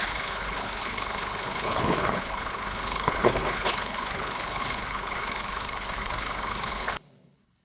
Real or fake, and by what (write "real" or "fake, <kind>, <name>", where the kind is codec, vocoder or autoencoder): fake, codec, HILCodec